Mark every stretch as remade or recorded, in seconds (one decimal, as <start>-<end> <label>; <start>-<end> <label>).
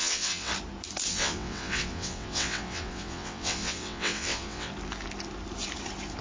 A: 0.0-0.5 remade; 0.5-1.1 recorded; 1.1-4.7 remade; 4.7-6.2 recorded